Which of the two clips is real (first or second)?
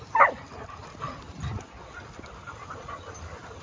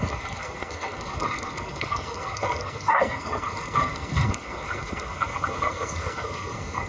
first